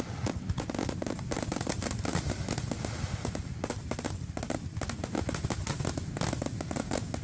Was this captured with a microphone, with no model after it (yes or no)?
yes